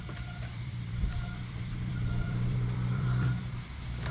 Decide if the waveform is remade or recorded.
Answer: remade